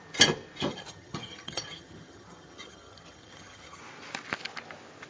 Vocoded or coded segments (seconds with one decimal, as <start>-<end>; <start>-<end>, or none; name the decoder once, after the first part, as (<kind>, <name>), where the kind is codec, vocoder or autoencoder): 0.7-3.8 (vocoder, HiFi-GAN)